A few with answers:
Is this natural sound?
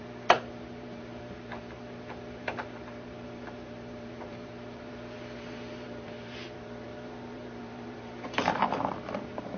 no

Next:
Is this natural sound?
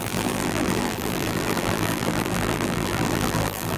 no